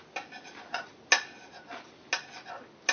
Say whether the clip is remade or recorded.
recorded